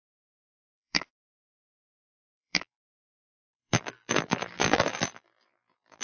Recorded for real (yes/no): no